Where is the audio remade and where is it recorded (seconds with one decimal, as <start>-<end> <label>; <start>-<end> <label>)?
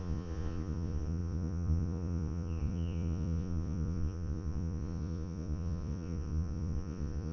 0.0-7.3 remade